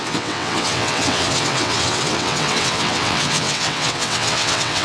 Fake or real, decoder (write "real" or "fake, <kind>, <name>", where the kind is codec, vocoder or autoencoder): fake, vocoder, WaveNeXt